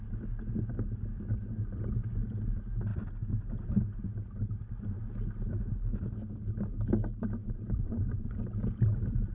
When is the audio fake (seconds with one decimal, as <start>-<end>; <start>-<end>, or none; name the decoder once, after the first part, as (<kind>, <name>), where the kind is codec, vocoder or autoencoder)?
7.4-8.4 (vocoder, Vocos)